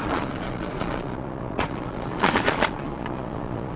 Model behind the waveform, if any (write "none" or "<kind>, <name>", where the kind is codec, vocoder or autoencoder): vocoder, Vocos